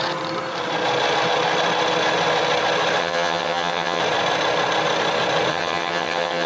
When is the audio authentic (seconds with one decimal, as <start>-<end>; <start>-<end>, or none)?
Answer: 0.0-3.0; 4.0-5.5